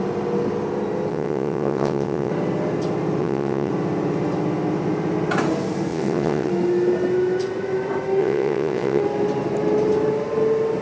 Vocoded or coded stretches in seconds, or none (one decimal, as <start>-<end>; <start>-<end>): 1.1-2.3; 3.2-3.7; 5.9-6.5; 8.2-9.0

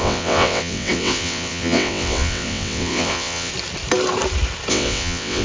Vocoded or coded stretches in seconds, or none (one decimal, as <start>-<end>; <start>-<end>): 0.0-3.5; 4.7-5.4